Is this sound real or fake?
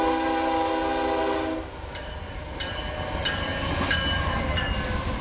real